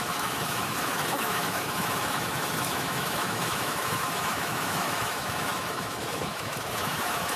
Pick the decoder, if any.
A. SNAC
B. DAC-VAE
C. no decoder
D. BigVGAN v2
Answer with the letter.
B